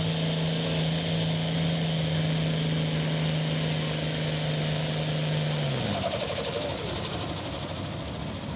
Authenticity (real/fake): real